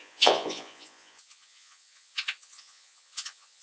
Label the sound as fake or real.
fake